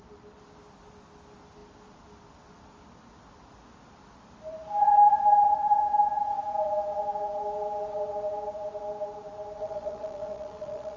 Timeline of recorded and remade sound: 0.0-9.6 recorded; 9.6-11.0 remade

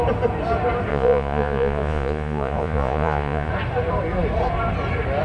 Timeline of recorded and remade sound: 0.0-0.9 recorded; 0.9-3.5 remade; 3.5-5.2 recorded

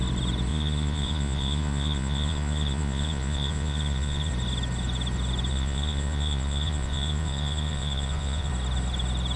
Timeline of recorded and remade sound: 0.0-0.5 recorded; 0.5-4.3 remade; 4.3-5.5 recorded; 5.5-8.5 remade; 8.5-9.4 recorded